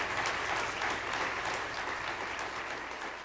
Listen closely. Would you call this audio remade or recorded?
recorded